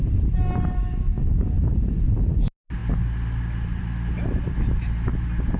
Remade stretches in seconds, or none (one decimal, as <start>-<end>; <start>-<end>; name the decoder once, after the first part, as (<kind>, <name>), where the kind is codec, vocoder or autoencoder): none